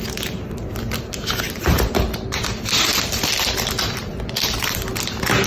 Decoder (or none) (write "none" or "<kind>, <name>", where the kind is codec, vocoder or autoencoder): none